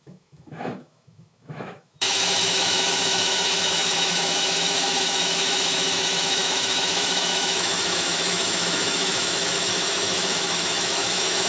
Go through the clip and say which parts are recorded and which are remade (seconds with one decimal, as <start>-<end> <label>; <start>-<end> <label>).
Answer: 0.0-11.5 remade